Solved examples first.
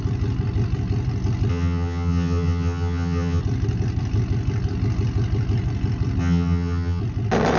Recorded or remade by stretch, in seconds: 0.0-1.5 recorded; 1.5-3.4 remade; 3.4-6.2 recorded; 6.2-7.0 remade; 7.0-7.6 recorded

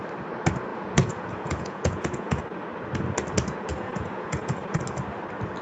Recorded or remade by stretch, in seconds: 0.0-0.7 recorded; 0.7-2.4 remade; 2.4-3.7 recorded; 3.7-4.8 remade; 4.8-5.6 recorded